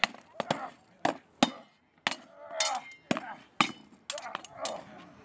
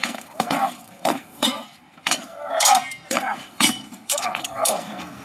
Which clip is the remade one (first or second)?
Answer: second